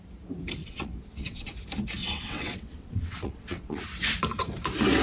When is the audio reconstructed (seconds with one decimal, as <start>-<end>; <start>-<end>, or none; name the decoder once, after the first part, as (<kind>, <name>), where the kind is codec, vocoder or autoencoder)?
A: 0.6-1.5 (vocoder, WaveNeXt); 2.0-3.8